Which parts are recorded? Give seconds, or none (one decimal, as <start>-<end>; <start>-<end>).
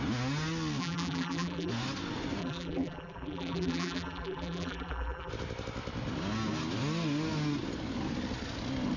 0.0-0.8; 1.7-2.4; 5.3-9.0